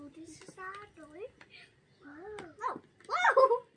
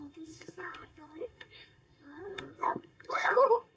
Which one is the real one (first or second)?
first